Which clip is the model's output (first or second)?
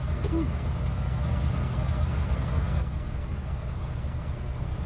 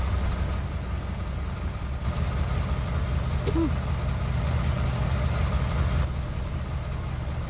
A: first